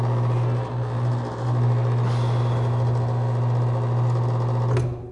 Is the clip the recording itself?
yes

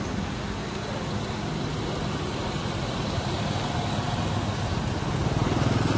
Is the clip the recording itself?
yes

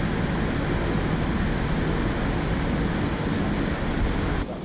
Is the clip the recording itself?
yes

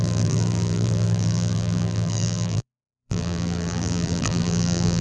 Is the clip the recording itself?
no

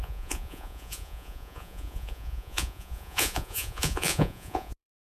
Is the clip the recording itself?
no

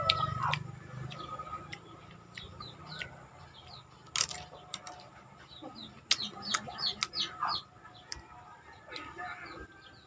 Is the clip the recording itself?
yes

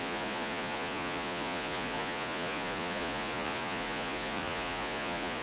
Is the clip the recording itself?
no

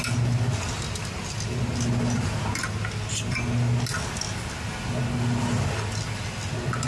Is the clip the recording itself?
yes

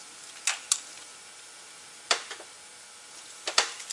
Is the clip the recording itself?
no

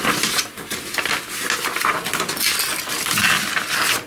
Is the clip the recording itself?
yes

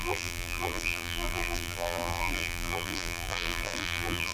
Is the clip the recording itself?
no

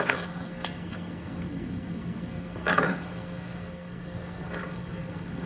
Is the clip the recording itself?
no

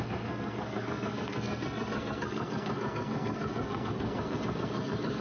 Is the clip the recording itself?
no